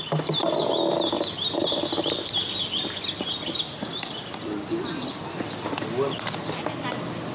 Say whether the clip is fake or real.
real